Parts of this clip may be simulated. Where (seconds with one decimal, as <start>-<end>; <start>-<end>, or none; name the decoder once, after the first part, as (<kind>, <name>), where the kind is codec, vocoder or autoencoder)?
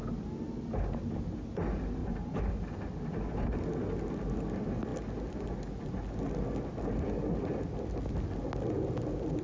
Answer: 2.0-2.5 (vocoder, BigVGAN v2); 2.9-3.6